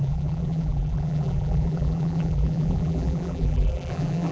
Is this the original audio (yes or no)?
no